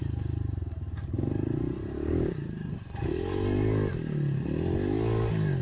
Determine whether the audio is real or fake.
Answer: real